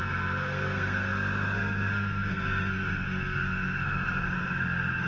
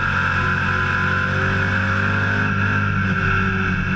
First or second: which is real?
second